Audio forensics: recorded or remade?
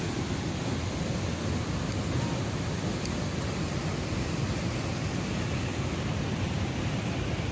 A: recorded